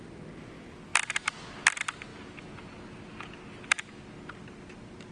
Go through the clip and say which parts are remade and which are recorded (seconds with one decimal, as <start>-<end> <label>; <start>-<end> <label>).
0.0-5.1 recorded